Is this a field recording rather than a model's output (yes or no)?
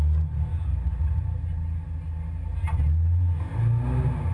yes